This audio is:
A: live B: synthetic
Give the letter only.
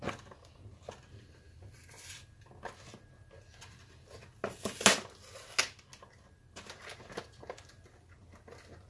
A